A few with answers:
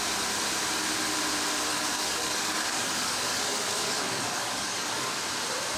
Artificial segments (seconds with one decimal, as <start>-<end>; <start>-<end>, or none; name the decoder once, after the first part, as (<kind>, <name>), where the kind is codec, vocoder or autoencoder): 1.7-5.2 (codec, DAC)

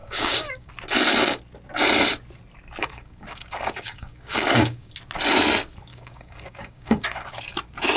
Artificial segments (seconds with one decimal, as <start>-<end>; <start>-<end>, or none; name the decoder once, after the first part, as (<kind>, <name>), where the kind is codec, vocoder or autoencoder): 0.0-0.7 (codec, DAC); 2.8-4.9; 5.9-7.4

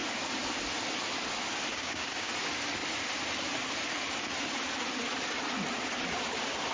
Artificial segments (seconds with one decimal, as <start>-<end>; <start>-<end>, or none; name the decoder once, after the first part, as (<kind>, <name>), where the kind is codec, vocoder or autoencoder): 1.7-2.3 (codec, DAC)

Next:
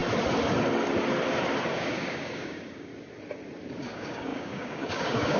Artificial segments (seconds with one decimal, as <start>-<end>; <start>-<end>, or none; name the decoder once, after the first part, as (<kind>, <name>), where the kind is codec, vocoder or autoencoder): 1.7-2.9 (codec, DAC); 3.8-5.4

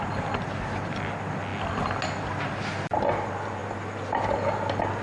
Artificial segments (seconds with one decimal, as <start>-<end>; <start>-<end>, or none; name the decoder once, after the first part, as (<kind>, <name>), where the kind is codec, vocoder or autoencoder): none

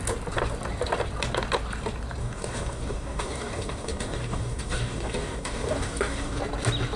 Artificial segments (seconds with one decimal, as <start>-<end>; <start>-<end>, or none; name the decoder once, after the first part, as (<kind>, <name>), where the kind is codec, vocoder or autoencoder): 2.2-6.4 (codec, DAC)